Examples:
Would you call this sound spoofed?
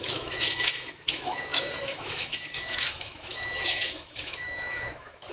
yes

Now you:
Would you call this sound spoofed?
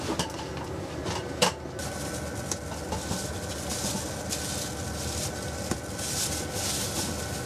no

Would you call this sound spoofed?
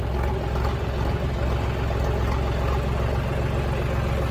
no